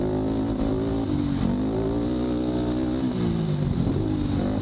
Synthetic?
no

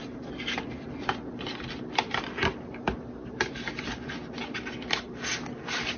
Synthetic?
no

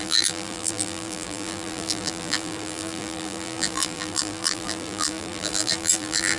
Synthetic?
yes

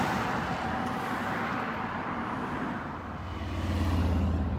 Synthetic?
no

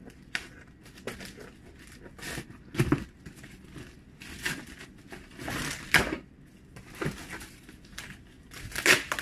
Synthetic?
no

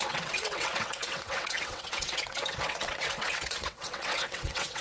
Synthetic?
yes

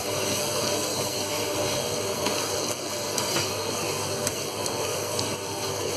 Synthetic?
yes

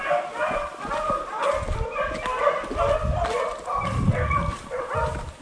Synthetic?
no